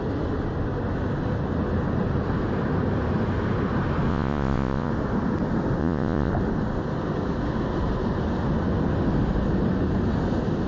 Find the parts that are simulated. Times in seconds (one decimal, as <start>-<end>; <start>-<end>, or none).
4.1-4.9; 5.8-6.3